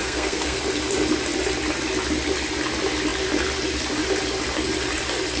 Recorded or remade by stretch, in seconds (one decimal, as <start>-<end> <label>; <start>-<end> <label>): 0.0-0.6 remade; 0.6-5.4 recorded